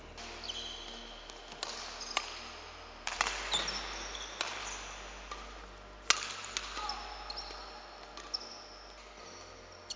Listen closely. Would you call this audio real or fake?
real